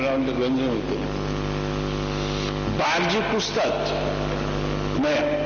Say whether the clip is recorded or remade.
recorded